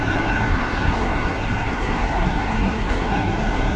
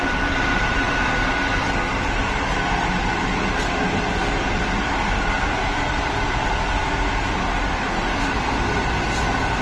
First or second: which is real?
second